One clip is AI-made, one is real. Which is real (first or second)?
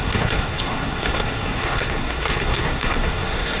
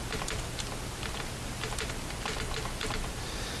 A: second